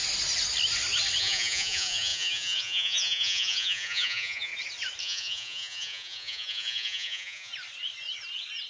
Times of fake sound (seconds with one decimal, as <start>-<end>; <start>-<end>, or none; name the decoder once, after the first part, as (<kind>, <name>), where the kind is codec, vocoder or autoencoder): 1.2-4.5 (vocoder, Vocos); 5.0-7.5